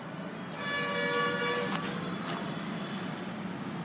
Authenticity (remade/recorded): recorded